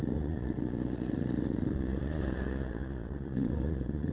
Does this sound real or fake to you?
fake